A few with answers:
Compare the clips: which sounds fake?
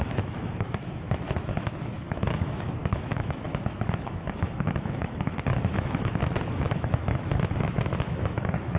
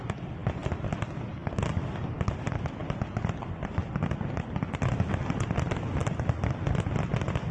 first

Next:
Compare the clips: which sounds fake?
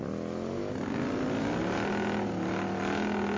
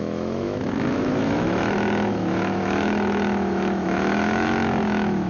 second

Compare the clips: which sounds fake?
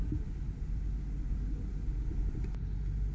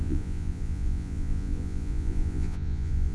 second